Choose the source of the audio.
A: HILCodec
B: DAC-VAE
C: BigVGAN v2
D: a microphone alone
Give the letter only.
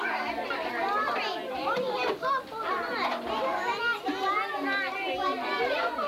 D